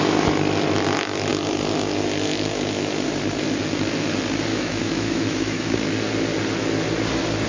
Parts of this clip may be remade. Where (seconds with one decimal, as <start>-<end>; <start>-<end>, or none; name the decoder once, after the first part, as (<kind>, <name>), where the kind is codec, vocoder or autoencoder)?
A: 4.5-5.7 (autoencoder, DAC-VAE)